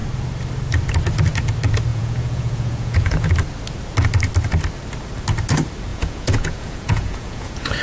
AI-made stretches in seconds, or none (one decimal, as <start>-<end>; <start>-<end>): 1.9-3.3; 5.9-7.8